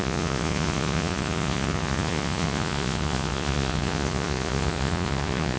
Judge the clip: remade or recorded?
remade